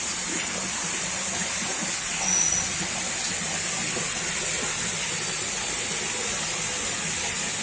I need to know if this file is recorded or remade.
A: recorded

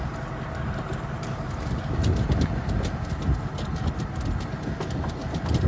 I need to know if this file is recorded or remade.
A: recorded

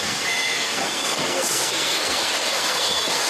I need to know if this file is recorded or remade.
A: remade